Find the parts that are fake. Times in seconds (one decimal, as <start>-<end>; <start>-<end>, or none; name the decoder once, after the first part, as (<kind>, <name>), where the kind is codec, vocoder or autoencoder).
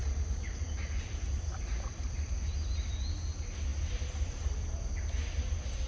3.7-4.7 (vocoder, BigVGAN v2)